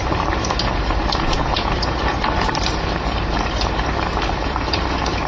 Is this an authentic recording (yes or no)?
no